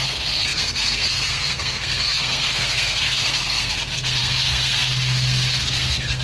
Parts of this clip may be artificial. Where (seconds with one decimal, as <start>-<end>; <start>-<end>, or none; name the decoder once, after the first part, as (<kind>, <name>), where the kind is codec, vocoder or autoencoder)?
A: 0.0-6.2 (codec, SNAC)